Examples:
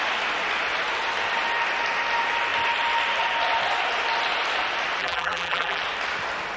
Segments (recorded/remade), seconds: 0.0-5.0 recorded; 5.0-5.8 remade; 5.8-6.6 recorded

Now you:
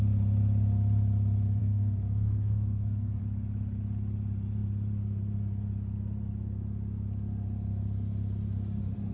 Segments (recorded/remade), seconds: 0.0-1.6 recorded; 1.6-3.2 remade; 3.2-9.1 recorded

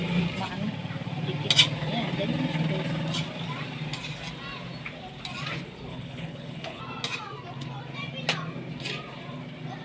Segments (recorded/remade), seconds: 0.0-5.9 recorded; 5.9-6.8 remade; 6.8-9.8 recorded

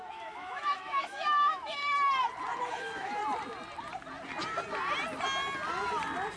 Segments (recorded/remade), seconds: 0.0-1.8 remade; 1.8-2.7 recorded; 2.7-3.2 remade; 3.2-6.4 recorded